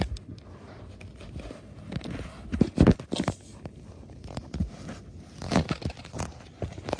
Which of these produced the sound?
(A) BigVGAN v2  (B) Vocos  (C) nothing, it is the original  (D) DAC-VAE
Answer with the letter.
C